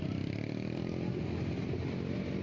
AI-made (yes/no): no